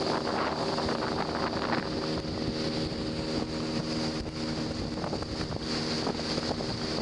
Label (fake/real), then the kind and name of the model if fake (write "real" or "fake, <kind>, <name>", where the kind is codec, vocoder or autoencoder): real